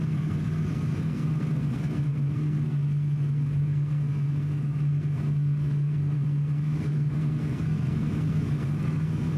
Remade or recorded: remade